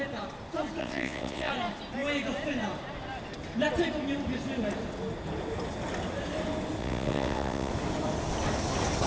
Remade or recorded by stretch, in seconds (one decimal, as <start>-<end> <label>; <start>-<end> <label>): 0.0-0.8 recorded; 0.8-1.5 remade; 1.5-6.8 recorded; 6.8-7.7 remade; 7.7-9.1 recorded